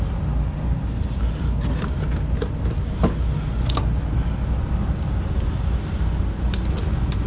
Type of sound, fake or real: real